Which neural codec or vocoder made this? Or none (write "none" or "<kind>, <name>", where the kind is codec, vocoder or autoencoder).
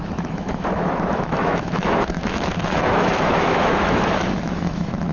autoencoder, DAC-VAE